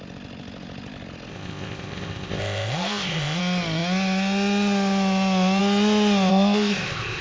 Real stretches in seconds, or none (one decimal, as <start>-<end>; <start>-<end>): 0.0-1.3; 3.4-6.3